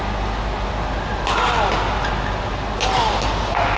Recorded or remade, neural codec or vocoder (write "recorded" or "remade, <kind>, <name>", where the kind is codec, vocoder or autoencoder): recorded